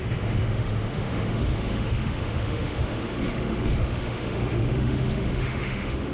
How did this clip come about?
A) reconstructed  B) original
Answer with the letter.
A